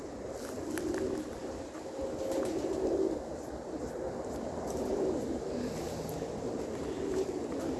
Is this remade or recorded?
recorded